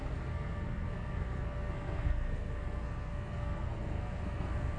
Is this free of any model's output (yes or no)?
no